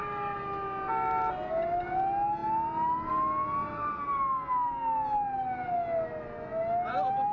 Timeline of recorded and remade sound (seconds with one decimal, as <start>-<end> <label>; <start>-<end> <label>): 0.0-7.3 recorded